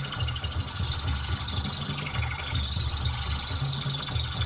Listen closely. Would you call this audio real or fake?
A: real